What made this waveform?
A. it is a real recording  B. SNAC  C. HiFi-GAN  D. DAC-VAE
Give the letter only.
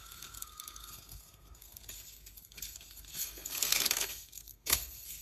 B